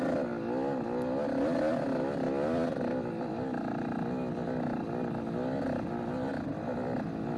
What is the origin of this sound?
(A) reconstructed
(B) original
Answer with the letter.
B